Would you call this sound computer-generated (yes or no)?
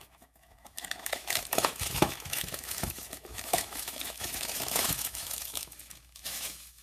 yes